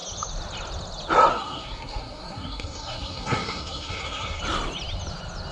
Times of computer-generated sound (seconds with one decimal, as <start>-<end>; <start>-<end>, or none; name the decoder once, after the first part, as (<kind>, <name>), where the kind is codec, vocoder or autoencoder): 1.3-4.4 (codec, SNAC)

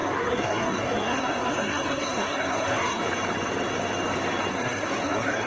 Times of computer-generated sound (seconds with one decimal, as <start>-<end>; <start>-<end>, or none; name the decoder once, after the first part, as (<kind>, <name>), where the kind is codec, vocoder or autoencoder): 0.0-3.0 (codec, SNAC); 4.5-5.5